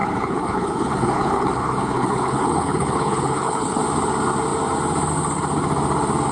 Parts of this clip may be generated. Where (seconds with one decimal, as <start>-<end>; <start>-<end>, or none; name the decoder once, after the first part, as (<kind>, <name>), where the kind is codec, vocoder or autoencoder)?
0.0-3.8 (codec, HILCodec)